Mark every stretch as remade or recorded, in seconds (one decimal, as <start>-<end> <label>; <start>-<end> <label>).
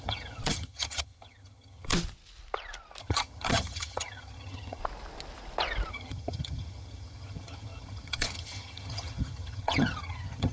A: 0.0-1.9 remade; 1.9-3.0 recorded; 3.0-4.8 remade; 4.8-5.9 recorded; 5.9-10.5 remade